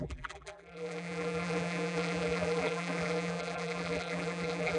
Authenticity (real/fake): fake